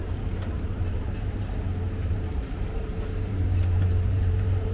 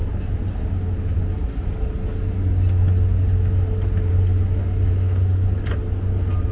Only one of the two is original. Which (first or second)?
second